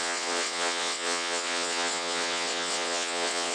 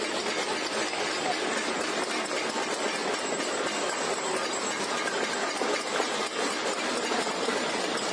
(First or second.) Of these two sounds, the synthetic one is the first